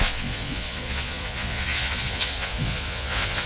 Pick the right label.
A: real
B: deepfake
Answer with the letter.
B